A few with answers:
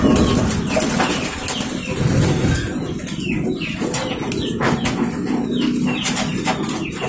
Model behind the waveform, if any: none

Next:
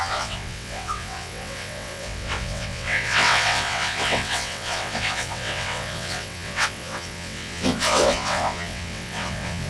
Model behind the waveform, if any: vocoder, WaveNeXt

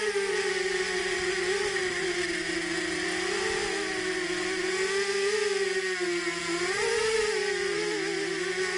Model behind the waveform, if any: none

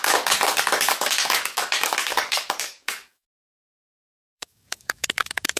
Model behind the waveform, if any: codec, DAC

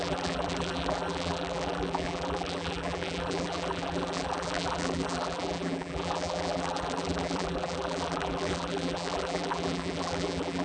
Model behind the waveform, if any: vocoder, BigVGAN v2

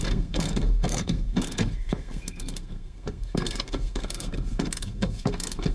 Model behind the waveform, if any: codec, SNAC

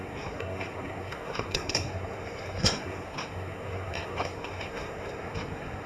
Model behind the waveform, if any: codec, SNAC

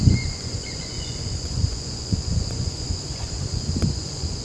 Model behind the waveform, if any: vocoder, Vocos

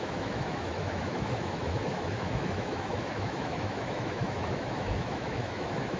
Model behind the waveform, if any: autoencoder, DAC-VAE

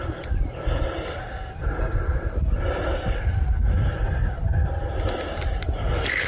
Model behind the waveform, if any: none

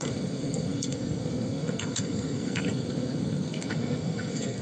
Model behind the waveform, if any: codec, SNAC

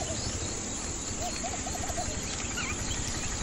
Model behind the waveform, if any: none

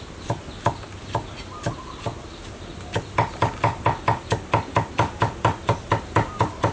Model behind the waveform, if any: none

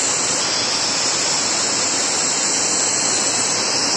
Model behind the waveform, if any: none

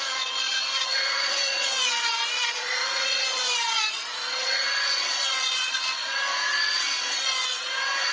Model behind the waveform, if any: vocoder, Vocos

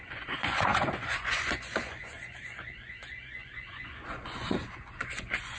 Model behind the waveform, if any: vocoder, Vocos